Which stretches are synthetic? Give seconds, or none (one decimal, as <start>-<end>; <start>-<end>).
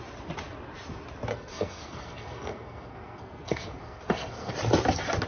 1.3-4.5